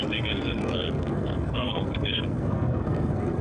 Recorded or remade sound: remade